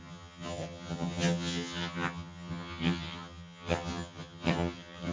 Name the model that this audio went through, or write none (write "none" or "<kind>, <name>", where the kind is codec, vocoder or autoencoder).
vocoder, HiFi-GAN